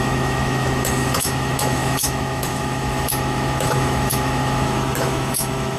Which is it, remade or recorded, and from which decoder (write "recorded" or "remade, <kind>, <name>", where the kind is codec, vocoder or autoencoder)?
remade, autoencoder, DAC-VAE